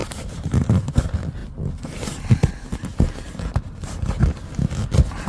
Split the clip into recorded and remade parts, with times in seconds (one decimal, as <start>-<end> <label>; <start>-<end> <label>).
0.0-0.9 remade; 0.9-5.3 recorded